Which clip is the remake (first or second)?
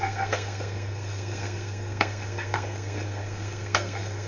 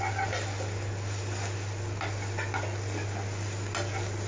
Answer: first